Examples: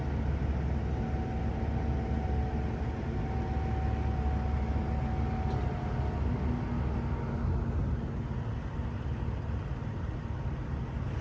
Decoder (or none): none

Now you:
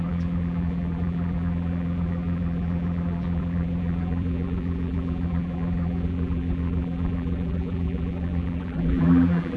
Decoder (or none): vocoder, BigVGAN v2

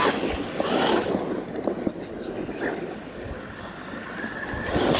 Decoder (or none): none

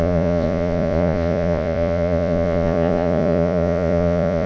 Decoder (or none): vocoder, Vocos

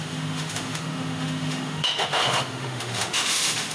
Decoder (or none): autoencoder, DAC-VAE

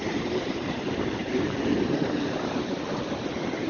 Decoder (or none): vocoder, BigVGAN v2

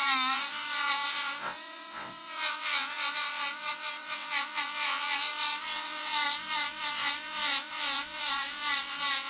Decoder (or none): vocoder, WaveNeXt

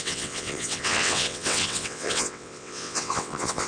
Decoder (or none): vocoder, WaveNeXt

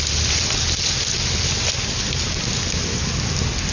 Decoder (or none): none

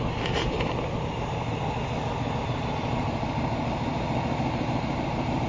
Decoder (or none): none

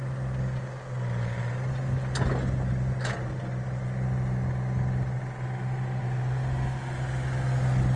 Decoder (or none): none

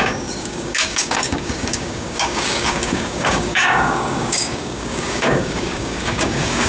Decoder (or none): codec, DAC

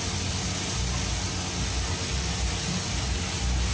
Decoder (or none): none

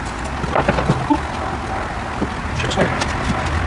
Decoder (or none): none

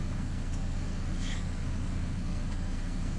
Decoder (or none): codec, SNAC